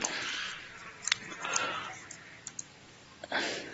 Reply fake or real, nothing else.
fake